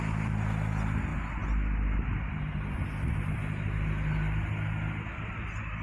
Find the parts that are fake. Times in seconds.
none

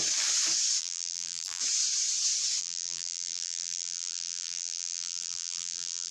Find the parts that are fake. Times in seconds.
0.8-1.6 (vocoder, BigVGAN v2); 2.6-6.1

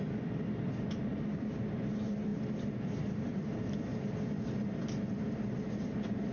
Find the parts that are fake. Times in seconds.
0.0-2.3 (vocoder, BigVGAN v2); 2.9-3.9; 5.8-6.3

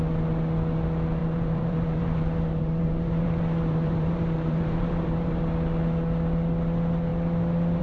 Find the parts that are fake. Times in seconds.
1.2-5.4 (vocoder, BigVGAN v2)

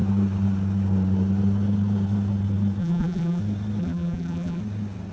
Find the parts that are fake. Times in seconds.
2.8-3.4 (vocoder, BigVGAN v2); 3.8-4.6

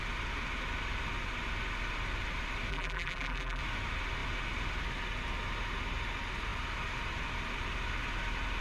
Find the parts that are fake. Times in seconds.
2.7-3.6 (vocoder, BigVGAN v2)

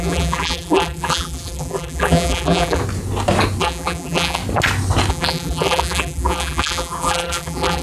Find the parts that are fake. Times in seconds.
0.0-2.8 (vocoder, BigVGAN v2); 3.6-4.4; 5.1-7.8

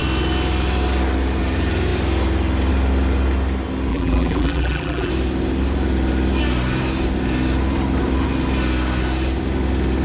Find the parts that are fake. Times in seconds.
3.9-5.1 (vocoder, BigVGAN v2)